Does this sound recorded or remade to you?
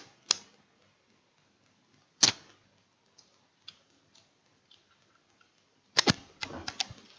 recorded